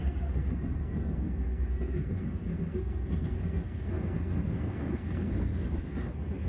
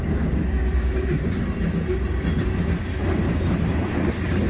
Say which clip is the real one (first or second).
second